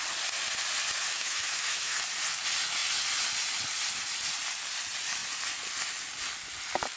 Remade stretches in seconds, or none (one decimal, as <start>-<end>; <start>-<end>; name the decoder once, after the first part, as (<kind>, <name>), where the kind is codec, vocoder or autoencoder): 1.1-2.0 (autoencoder, DAC-VAE)